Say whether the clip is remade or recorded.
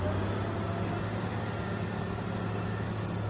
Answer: recorded